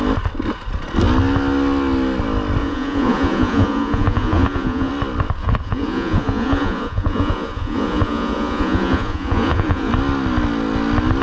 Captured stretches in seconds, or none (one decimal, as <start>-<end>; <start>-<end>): 0.0-2.6; 4.9-5.4; 9.9-11.2